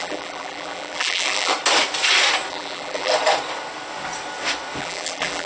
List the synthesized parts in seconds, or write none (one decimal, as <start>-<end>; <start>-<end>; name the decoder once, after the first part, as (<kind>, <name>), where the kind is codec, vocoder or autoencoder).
0.0-1.5 (vocoder, BigVGAN v2); 2.5-3.1; 4.8-5.5